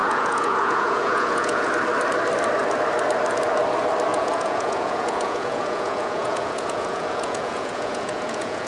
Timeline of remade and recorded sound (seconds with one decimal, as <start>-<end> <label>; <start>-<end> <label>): 0.0-1.7 remade; 1.7-4.1 recorded; 4.1-8.7 remade